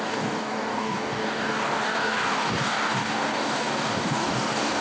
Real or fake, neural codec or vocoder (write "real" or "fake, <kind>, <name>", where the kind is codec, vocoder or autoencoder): fake, codec, DAC